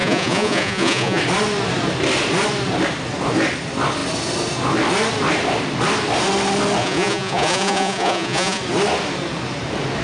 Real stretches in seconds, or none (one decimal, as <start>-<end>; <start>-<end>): 1.2-6.8; 8.6-10.0